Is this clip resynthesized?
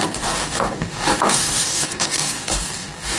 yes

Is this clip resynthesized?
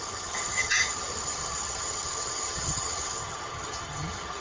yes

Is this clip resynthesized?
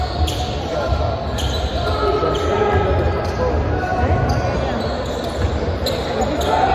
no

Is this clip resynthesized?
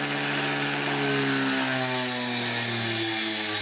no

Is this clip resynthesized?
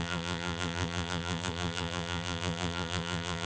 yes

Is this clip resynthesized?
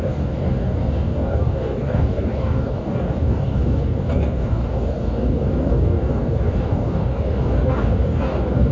yes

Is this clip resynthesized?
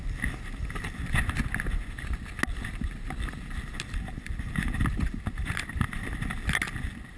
no